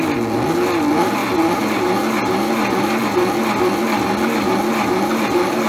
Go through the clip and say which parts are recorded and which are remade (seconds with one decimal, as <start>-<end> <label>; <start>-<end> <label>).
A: 0.0-1.2 recorded; 1.2-1.8 remade; 1.8-5.7 recorded